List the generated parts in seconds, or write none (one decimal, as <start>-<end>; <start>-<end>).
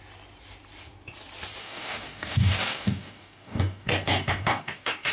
1.6-5.1